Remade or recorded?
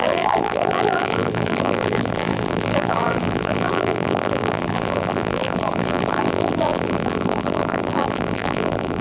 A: remade